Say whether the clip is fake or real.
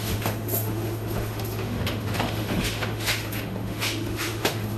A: fake